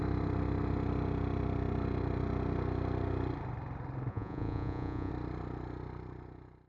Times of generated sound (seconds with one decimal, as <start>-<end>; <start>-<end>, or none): 4.1-5.1